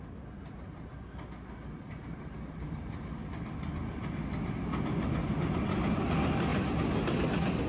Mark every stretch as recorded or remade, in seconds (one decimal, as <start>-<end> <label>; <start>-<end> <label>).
0.0-7.7 recorded

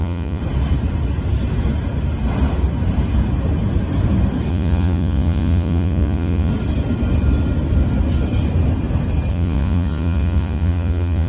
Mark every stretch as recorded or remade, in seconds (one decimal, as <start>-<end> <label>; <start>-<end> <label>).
0.0-0.4 remade; 0.4-4.5 recorded; 4.5-6.5 remade; 6.5-9.3 recorded; 9.3-11.3 remade

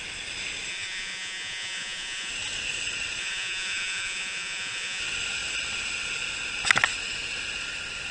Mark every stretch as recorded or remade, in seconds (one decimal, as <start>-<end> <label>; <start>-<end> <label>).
0.0-0.7 recorded; 0.7-2.3 remade; 2.3-3.2 recorded; 3.2-5.0 remade; 5.0-8.1 recorded

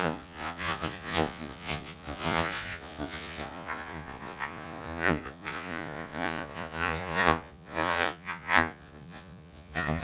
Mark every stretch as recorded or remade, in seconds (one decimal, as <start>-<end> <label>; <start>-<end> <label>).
0.0-10.0 remade

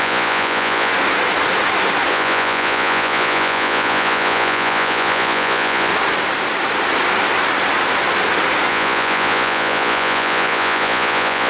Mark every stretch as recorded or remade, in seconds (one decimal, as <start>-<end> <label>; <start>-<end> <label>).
0.0-0.9 remade; 0.9-2.1 recorded; 2.1-5.9 remade; 5.9-8.7 recorded; 8.7-11.5 remade

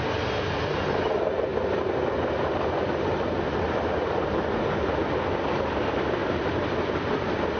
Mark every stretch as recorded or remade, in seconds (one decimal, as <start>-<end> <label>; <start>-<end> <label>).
0.0-7.6 recorded

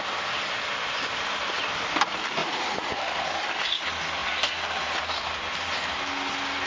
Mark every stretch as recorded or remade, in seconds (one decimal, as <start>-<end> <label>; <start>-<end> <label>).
0.0-2.4 recorded; 2.4-3.0 remade; 3.0-6.7 recorded